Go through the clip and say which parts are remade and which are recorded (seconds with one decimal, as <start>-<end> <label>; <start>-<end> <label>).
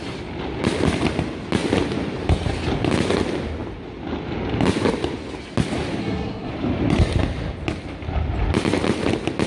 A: 0.0-6.0 recorded; 6.0-6.5 remade; 6.5-9.5 recorded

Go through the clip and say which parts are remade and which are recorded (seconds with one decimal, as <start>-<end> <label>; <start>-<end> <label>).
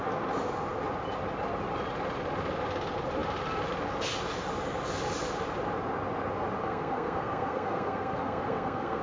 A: 0.0-6.6 recorded; 6.6-9.0 remade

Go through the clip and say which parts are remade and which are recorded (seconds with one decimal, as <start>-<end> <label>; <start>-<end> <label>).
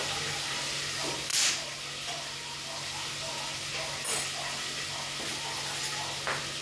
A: 0.0-6.6 recorded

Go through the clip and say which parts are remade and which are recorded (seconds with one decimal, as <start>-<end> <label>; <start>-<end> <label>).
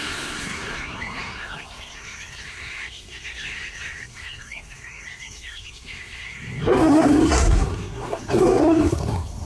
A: 0.0-9.4 remade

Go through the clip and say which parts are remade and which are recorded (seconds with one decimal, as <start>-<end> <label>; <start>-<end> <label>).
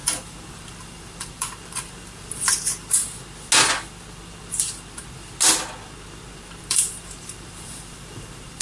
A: 0.0-3.0 remade; 3.0-6.7 recorded; 6.7-8.6 remade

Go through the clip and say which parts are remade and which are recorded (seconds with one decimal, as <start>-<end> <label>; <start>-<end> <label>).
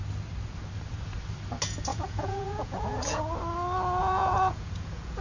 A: 0.0-1.9 recorded; 1.9-3.2 remade; 3.2-4.0 recorded; 4.0-5.2 remade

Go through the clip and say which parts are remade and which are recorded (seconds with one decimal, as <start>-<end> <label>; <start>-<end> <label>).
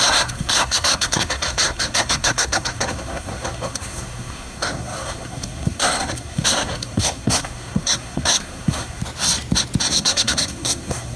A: 0.0-9.0 remade; 9.0-9.9 recorded; 9.9-11.2 remade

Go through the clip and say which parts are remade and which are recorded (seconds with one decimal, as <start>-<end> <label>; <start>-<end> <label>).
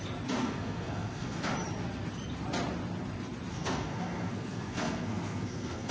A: 0.0-0.4 recorded; 0.4-1.5 remade; 1.5-3.5 recorded; 3.5-5.9 remade